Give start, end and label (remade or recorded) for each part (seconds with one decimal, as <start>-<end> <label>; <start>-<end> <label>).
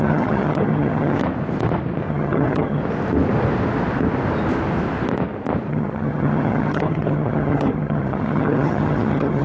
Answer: 0.0-1.2 remade; 1.2-2.1 recorded; 2.1-2.8 remade; 2.8-5.7 recorded; 5.7-9.4 remade